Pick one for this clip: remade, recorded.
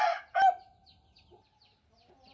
recorded